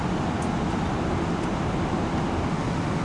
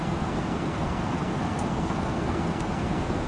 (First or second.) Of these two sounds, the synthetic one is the second